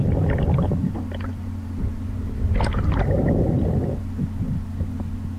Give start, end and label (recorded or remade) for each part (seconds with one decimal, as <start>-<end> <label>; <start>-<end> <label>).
0.0-0.8 recorded; 0.8-1.8 remade; 1.8-2.7 recorded; 2.7-3.2 remade; 3.2-5.4 recorded